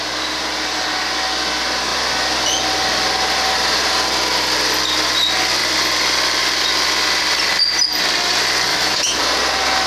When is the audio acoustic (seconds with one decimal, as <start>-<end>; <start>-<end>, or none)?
0.0-8.7; 9.2-9.9